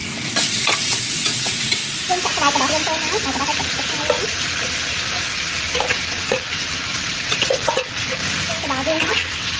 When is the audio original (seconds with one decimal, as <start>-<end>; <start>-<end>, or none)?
0.0-0.9; 1.8-5.8; 8.2-9.0